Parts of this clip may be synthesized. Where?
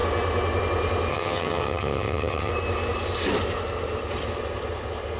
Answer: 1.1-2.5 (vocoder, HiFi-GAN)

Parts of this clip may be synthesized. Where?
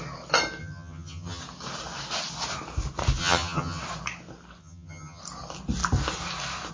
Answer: 0.6-1.4 (vocoder, HiFi-GAN); 3.2-3.8; 4.6-5.2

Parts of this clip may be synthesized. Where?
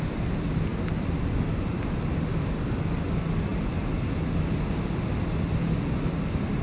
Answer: none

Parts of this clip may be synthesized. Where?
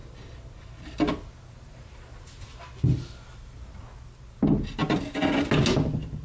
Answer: none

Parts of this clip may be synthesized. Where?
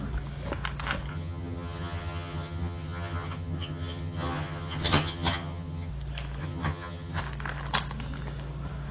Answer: 1.1-5.9 (vocoder, HiFi-GAN); 6.4-7.2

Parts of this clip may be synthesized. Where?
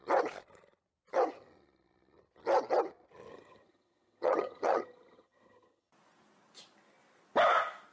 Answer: 3.3-5.9 (vocoder, HiFi-GAN)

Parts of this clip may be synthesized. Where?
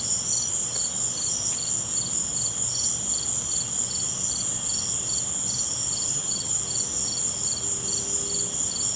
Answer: 6.1-6.6 (vocoder, HiFi-GAN)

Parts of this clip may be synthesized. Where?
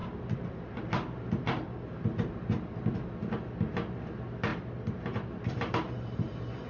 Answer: none